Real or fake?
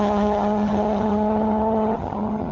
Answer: fake